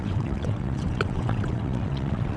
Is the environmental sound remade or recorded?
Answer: remade